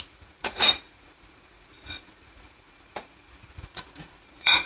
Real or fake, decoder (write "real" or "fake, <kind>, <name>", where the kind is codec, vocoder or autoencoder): fake, vocoder, Vocos